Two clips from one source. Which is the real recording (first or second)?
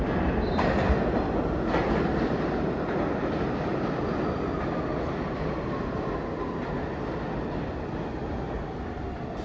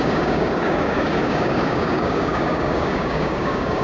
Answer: first